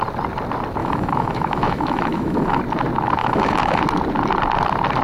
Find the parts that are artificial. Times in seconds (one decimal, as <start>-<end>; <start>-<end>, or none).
0.8-2.6; 3.2-3.8